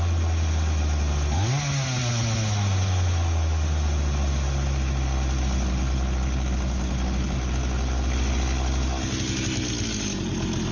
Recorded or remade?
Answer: recorded